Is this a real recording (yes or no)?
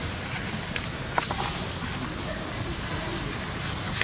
yes